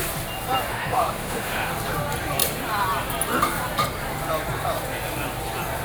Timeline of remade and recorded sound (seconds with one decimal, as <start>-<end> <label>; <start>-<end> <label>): 0.0-0.7 recorded; 0.7-1.7 remade; 1.7-5.8 recorded

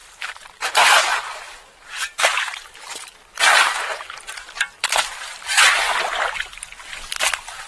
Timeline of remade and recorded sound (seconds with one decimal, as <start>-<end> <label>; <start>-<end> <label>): 0.0-0.7 remade; 0.7-1.1 recorded; 1.1-5.7 remade; 5.7-7.7 recorded

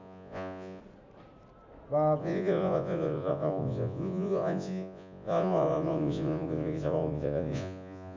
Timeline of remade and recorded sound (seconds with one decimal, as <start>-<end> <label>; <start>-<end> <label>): 0.0-0.8 remade; 0.8-2.2 recorded; 2.2-8.2 remade